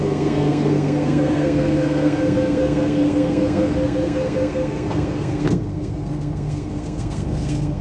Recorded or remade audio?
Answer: remade